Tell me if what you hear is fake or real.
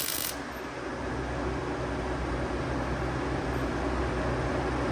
real